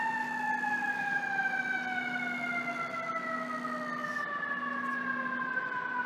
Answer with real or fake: real